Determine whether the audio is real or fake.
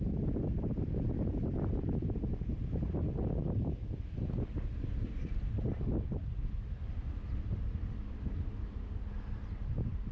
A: real